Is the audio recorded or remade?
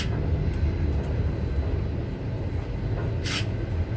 recorded